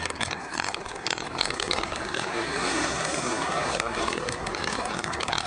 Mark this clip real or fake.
fake